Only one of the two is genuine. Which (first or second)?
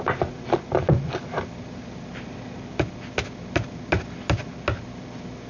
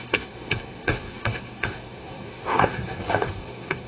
first